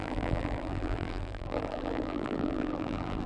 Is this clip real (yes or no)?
no